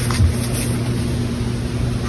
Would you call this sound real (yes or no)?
yes